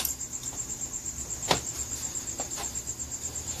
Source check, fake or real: fake